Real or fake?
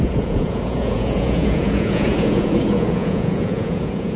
fake